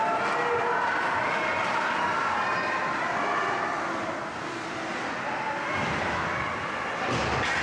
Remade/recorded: recorded